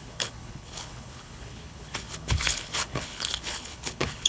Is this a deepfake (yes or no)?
yes